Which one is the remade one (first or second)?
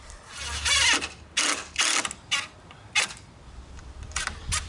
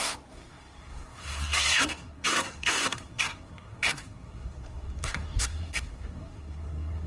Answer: second